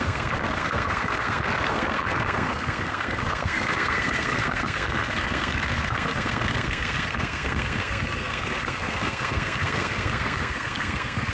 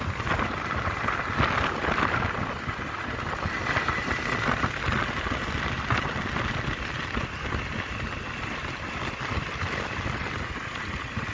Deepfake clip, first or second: first